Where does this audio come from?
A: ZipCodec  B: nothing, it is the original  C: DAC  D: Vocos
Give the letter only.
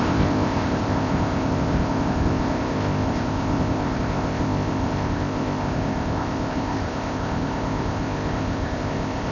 A